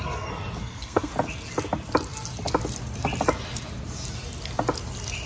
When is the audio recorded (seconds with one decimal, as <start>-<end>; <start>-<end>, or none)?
0.0-0.6; 1.1-5.3